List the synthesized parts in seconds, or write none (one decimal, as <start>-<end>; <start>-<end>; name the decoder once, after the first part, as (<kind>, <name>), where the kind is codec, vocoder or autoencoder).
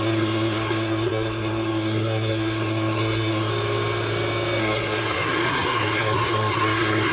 0.0-3.5 (codec, SNAC); 4.6-7.1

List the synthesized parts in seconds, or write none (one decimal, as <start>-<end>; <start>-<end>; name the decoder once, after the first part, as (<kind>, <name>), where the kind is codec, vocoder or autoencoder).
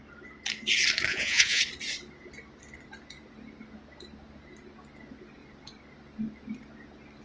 1.1-1.6 (vocoder, Vocos)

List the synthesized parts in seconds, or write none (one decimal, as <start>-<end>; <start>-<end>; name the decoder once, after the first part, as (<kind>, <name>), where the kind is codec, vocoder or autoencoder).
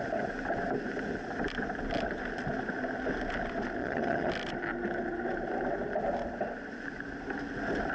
3.8-4.3 (vocoder, HiFi-GAN)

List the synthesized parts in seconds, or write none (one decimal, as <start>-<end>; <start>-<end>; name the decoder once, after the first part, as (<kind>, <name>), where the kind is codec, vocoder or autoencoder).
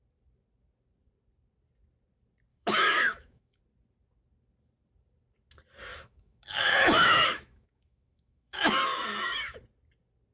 2.5-3.6 (autoencoder, DAC-VAE); 5.9-9.6